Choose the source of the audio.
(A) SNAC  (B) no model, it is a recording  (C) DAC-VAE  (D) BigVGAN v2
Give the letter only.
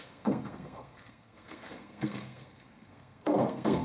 A